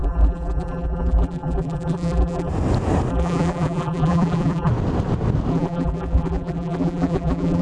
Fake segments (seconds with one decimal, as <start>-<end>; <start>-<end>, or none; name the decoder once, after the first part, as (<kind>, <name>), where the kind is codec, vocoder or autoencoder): 0.0-2.5 (vocoder, BigVGAN v2); 3.1-4.7; 5.5-7.6